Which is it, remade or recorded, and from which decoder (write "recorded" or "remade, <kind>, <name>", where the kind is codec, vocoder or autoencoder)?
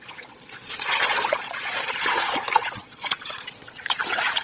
remade, vocoder, Vocos